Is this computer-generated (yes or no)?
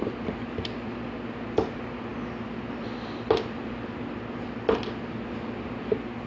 no